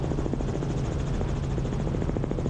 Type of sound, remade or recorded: recorded